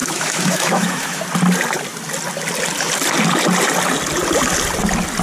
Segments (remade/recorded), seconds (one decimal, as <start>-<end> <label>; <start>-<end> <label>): 0.0-1.2 remade; 1.2-5.2 recorded